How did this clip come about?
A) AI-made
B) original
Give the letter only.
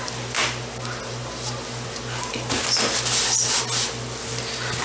B